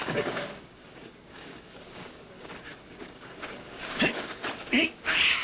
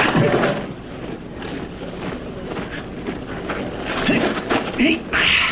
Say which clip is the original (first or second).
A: second